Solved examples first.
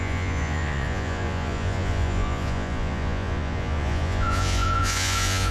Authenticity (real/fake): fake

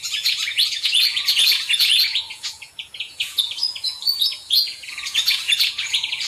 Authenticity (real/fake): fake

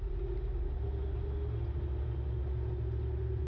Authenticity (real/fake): real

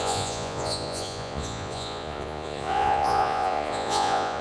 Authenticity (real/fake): fake